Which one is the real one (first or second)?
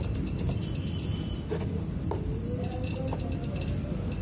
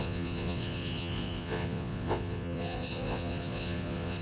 first